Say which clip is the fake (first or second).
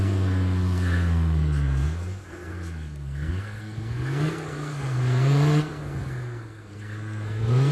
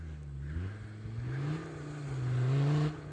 first